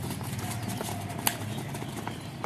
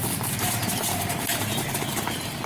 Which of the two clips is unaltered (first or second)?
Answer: first